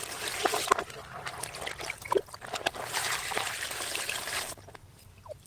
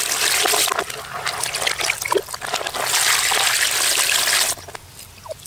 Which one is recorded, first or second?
second